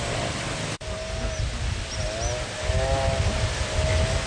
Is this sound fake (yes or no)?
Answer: no